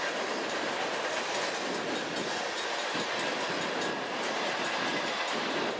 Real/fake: real